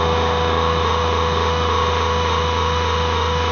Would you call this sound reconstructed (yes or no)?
yes